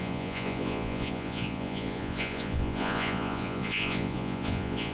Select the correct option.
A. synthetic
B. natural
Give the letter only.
A